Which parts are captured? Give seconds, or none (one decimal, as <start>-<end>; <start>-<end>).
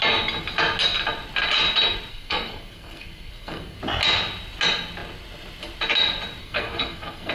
0.0-2.1; 3.8-6.4